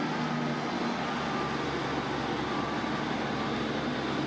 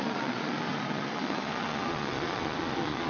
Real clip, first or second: first